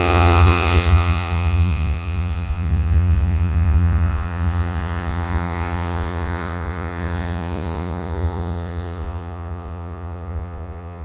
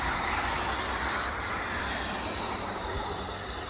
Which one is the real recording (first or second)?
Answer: second